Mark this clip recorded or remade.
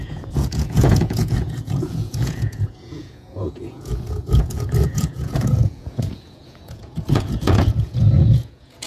remade